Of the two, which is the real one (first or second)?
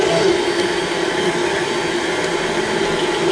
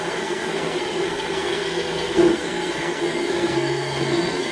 first